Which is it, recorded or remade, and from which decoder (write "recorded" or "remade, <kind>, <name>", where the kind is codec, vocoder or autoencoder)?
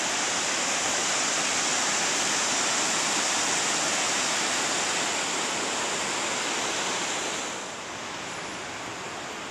recorded